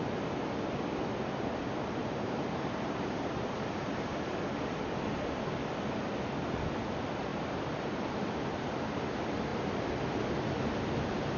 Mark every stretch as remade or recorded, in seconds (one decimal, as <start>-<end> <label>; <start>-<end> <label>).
0.0-2.0 recorded; 2.0-4.3 remade; 4.3-7.3 recorded; 7.3-8.8 remade; 8.8-11.4 recorded